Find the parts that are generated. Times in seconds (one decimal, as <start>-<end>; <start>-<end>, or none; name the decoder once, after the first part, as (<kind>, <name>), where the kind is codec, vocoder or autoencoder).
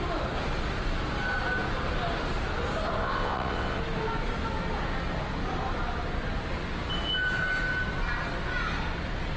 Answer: 3.0-3.8 (vocoder, WaveNeXt)